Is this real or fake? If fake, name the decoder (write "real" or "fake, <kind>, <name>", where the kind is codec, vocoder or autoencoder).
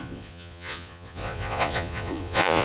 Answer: fake, vocoder, Vocos